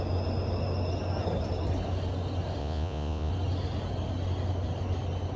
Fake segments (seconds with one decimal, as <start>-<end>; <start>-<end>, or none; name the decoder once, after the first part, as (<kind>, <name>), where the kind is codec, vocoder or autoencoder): 2.6-3.3 (vocoder, Vocos)